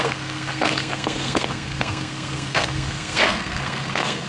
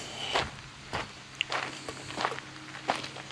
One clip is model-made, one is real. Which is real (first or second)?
second